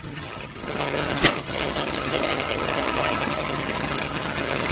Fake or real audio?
fake